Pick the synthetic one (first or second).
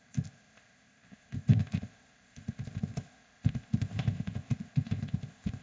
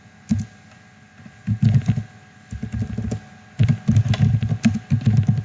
first